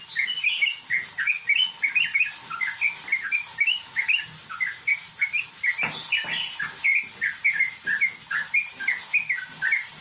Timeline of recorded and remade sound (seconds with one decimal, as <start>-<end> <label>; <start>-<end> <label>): 0.0-3.1 recorded; 3.1-4.2 remade; 4.2-10.0 recorded